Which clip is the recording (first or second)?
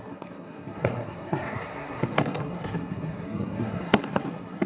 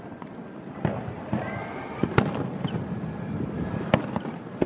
second